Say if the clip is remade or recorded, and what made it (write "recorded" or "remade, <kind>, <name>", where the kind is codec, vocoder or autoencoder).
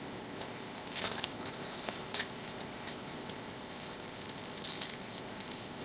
remade, codec, ZipCodec